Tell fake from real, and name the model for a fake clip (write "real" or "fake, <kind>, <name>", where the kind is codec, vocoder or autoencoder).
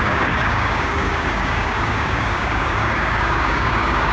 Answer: fake, codec, DAC